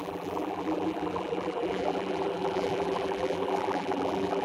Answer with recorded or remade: remade